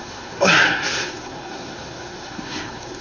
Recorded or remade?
remade